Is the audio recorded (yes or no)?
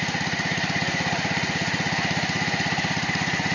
no